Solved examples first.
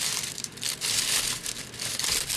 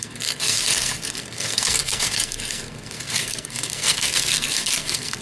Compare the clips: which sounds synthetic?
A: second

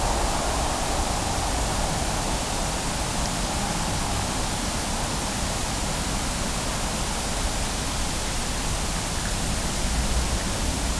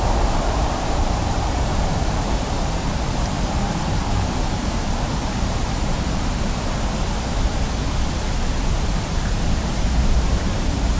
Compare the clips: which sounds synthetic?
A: second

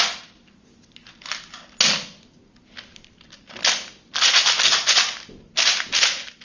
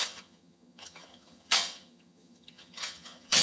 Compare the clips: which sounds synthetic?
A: second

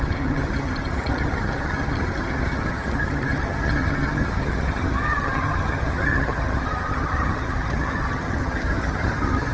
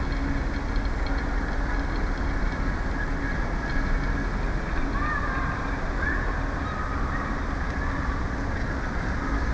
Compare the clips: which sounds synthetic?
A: first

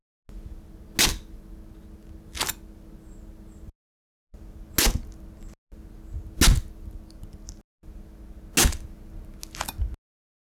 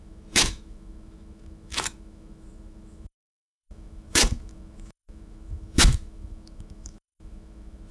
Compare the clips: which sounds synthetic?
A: second